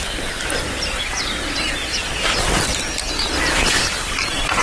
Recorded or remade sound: recorded